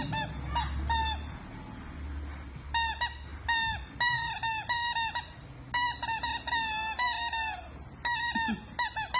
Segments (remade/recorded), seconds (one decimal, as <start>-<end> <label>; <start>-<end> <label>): 0.0-9.2 recorded